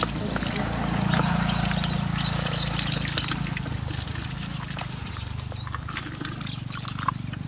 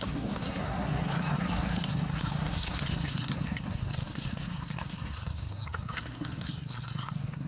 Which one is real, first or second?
first